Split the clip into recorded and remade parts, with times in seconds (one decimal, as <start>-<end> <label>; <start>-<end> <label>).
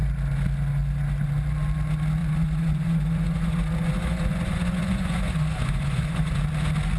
0.0-2.2 recorded; 2.2-6.4 remade; 6.4-7.0 recorded